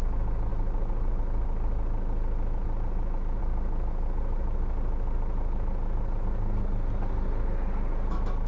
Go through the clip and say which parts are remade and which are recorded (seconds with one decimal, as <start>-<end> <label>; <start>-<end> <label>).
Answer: 0.0-8.5 recorded